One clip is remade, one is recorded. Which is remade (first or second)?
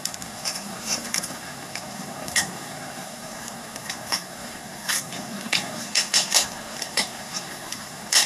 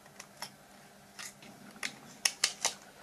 first